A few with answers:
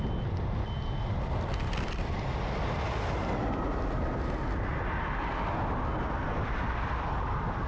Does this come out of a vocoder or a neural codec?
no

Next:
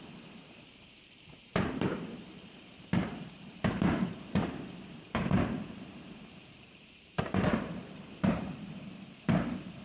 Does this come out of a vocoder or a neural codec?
yes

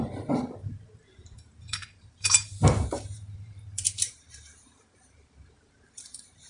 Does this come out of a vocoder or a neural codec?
yes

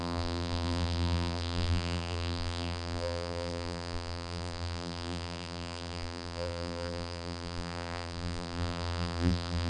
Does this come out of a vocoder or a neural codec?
yes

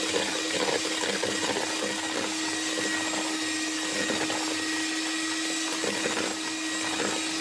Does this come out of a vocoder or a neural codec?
no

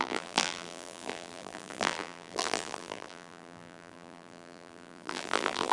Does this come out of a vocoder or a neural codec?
yes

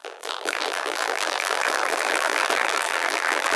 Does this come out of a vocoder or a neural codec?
yes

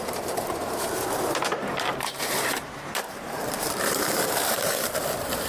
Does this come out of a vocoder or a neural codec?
yes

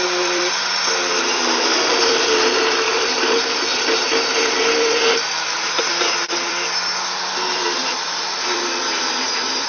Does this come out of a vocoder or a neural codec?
yes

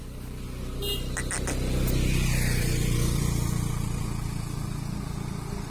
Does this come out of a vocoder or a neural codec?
no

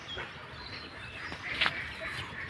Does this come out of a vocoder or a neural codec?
no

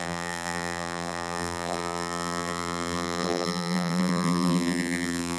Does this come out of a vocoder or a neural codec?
yes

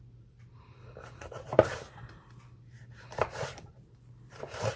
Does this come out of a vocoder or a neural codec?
yes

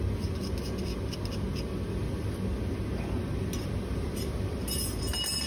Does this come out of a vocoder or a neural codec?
no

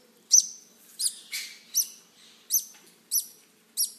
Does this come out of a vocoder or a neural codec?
no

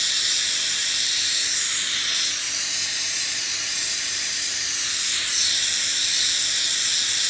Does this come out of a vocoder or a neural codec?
yes